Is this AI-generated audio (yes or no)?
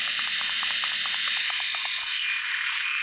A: no